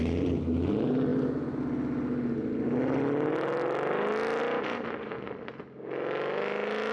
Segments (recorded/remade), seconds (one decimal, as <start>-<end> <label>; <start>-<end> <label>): 0.0-6.9 recorded